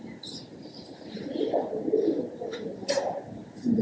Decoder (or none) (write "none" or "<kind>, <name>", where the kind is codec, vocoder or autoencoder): none